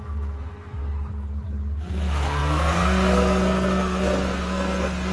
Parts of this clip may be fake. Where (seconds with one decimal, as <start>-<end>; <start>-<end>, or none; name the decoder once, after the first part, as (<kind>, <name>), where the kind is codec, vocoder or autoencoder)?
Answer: 0.0-0.8 (codec, SNAC); 1.8-5.1